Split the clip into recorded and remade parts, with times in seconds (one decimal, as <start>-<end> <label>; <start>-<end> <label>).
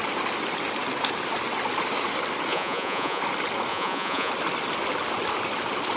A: 0.0-2.5 recorded; 2.5-3.2 remade; 3.2-3.7 recorded; 3.7-4.3 remade; 4.3-6.0 recorded